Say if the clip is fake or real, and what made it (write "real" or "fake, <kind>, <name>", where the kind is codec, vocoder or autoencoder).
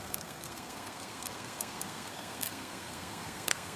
fake, codec, SNAC